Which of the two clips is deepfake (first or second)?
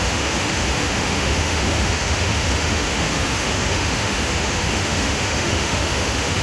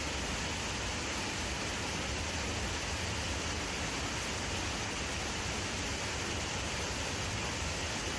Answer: first